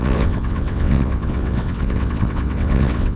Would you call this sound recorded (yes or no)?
no